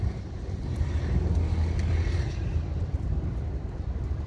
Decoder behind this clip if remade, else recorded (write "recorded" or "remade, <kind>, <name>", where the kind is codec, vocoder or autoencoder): recorded